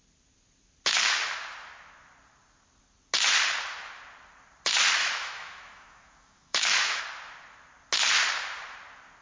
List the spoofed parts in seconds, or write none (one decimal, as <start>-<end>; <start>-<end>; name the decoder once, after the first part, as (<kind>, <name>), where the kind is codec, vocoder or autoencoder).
5.0-7.0 (autoencoder, DAC-VAE)